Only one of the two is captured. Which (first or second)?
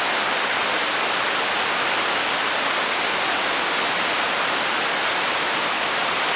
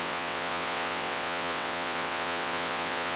first